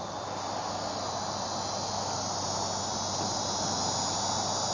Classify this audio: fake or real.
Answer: real